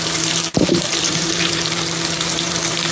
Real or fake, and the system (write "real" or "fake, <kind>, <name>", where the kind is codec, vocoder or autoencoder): fake, vocoder, BigVGAN v2